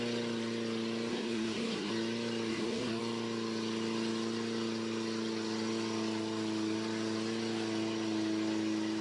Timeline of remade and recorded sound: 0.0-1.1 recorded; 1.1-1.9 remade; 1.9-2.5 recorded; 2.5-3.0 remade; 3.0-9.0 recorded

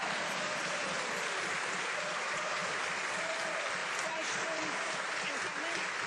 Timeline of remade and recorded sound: 0.0-3.3 remade; 3.3-3.8 recorded; 3.8-5.3 remade; 5.3-6.1 recorded